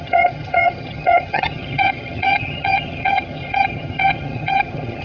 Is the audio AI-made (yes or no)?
yes